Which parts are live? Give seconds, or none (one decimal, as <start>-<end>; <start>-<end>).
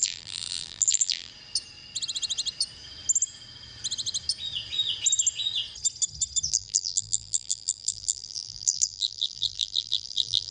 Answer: 1.3-6.5